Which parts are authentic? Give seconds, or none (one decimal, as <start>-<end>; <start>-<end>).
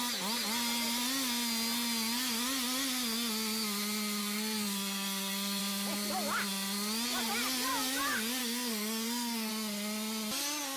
0.0-4.2; 5.6-8.4; 9.5-10.8